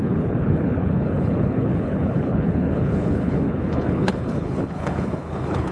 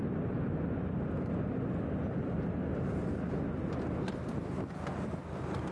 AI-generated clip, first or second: first